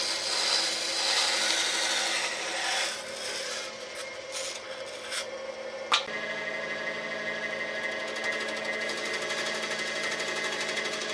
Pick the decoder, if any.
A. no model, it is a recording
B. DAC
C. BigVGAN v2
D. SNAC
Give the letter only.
A